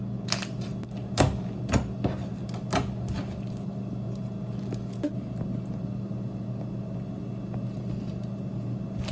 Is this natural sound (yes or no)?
yes